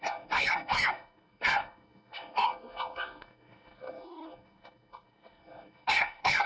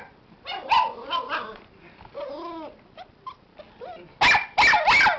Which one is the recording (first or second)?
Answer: second